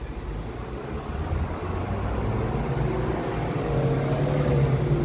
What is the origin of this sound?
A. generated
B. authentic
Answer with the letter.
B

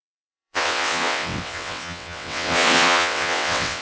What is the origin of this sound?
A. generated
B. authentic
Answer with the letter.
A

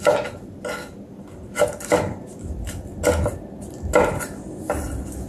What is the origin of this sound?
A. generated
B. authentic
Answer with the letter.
B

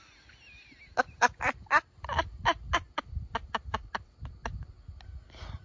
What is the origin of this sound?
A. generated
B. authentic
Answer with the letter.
B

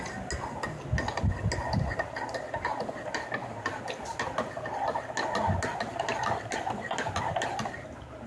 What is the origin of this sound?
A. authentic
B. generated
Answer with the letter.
A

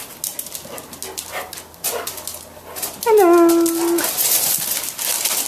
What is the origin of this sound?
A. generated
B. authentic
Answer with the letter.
B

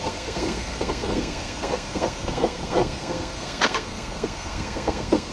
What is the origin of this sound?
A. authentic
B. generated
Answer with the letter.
B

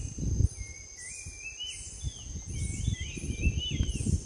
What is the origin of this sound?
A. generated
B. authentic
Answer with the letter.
B